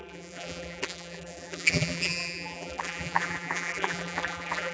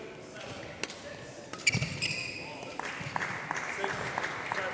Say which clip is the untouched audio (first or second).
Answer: second